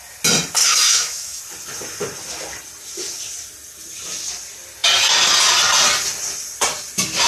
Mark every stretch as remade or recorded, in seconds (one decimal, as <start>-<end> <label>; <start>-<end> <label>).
0.0-0.6 recorded; 0.6-1.4 remade; 1.4-7.3 recorded